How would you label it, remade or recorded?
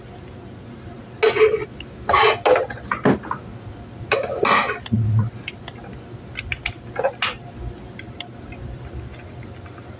recorded